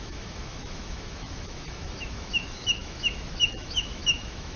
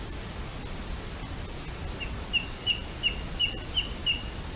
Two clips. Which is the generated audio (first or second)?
first